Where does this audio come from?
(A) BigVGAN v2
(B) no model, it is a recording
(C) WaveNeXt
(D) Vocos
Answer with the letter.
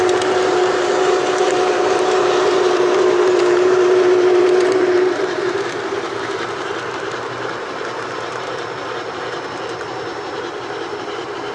A